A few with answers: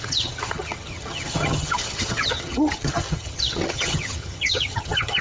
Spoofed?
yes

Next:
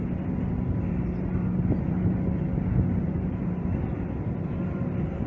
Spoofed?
no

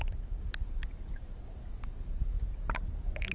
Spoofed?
no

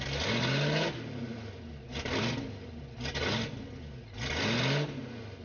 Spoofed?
no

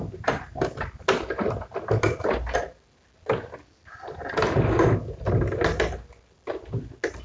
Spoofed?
no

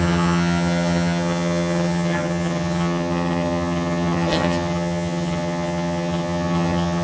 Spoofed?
yes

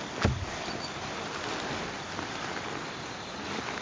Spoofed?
no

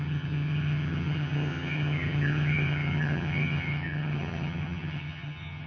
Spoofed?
yes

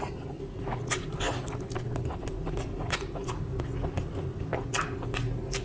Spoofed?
no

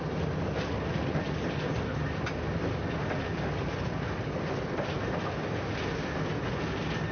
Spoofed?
no